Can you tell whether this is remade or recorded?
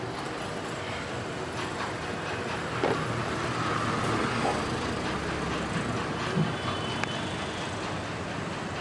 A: recorded